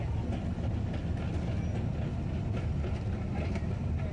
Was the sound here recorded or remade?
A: recorded